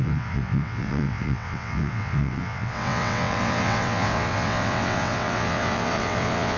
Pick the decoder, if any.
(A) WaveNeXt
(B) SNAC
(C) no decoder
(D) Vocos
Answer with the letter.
A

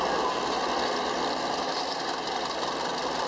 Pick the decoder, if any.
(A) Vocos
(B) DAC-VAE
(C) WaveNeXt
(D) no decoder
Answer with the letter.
D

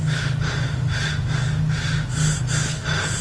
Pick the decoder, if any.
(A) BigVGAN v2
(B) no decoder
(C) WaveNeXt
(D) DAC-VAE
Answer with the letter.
B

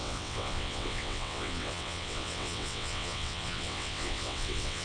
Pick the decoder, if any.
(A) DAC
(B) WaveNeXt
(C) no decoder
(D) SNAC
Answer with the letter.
B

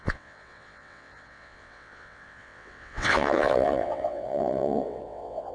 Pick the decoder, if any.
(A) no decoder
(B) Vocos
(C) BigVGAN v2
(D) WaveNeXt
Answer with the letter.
D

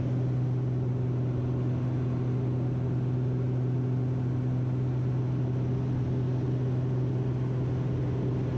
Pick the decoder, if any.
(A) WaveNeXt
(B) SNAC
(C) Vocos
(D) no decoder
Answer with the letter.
D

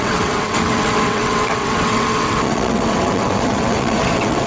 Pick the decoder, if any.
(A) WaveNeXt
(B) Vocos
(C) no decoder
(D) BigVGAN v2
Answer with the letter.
A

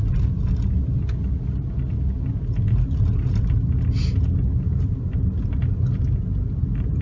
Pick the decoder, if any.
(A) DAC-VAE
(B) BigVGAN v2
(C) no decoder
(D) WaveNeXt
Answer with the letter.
C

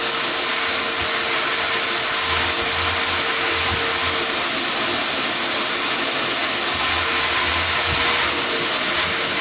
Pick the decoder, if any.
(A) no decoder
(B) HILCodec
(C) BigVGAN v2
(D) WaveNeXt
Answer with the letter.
A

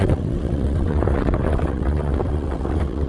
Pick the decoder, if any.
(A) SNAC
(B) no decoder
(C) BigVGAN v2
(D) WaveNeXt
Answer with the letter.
D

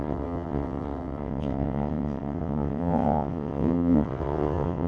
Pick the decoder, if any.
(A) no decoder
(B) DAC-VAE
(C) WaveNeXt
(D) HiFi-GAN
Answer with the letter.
C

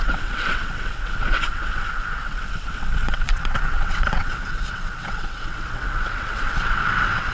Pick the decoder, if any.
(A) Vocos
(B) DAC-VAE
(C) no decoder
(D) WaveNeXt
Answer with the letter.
D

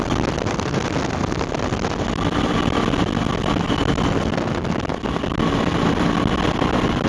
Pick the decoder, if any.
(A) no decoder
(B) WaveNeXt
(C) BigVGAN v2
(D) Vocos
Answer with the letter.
A